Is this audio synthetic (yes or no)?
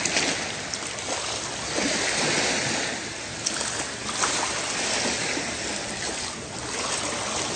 no